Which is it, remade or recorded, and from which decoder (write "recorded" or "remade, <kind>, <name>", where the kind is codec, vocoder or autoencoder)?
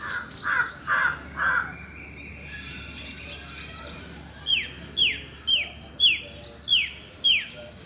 recorded